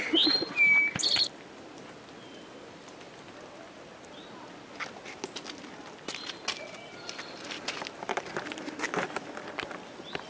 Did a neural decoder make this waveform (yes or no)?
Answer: no